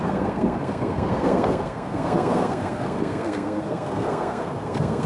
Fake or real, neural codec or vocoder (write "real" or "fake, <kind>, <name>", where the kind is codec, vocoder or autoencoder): fake, codec, SNAC